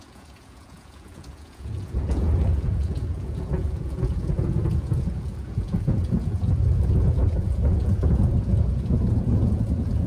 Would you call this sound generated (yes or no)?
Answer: yes